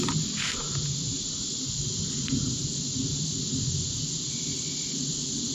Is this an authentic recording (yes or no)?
yes